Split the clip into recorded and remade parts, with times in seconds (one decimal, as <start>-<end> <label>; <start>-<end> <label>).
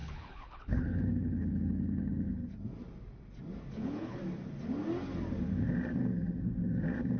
0.0-2.4 remade; 2.4-3.7 recorded; 3.7-4.2 remade; 4.2-7.2 recorded